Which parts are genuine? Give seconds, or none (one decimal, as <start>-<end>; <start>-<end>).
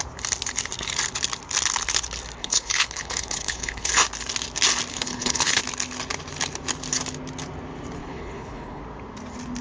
0.0-2.4; 3.9-4.9; 5.6-8.0; 8.8-9.6